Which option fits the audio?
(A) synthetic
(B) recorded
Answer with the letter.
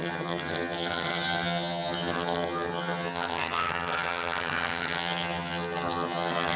A